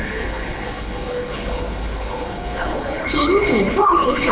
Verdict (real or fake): fake